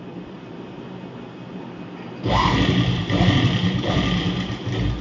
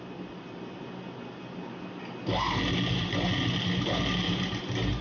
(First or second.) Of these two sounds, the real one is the second